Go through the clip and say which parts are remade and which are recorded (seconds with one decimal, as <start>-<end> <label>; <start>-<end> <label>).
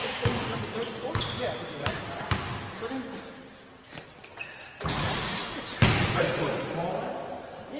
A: 0.0-4.4 recorded; 4.4-5.4 remade; 5.4-6.2 recorded; 6.2-6.8 remade; 6.8-7.8 recorded